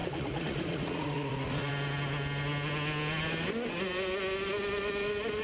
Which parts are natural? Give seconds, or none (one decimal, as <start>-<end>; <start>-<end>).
1.7-5.4